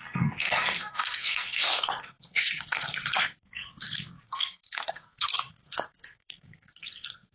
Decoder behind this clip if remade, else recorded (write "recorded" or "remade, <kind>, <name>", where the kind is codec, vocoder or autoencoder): remade, codec, SNAC